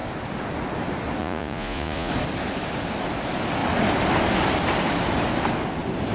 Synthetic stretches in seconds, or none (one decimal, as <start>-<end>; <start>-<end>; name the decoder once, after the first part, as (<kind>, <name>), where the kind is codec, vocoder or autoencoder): 1.2-2.1 (vocoder, Vocos)